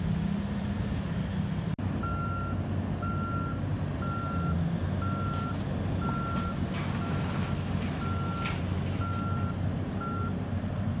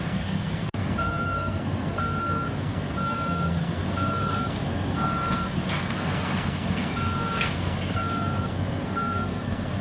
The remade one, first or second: second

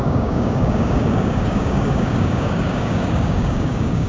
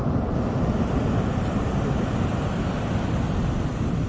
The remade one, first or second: first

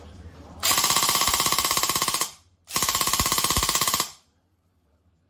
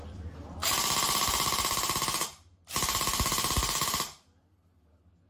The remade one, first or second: first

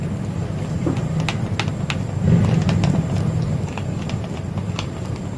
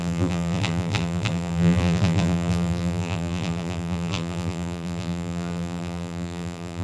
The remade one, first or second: second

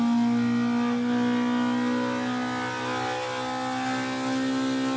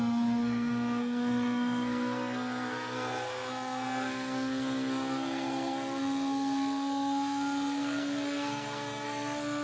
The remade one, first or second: second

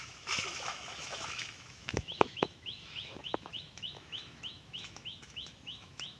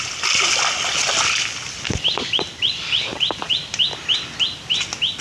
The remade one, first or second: first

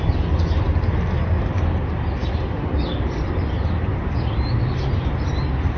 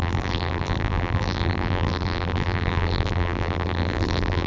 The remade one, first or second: second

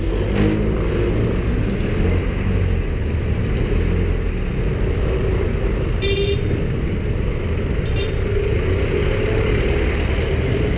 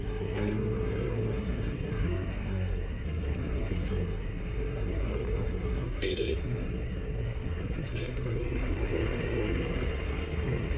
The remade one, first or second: second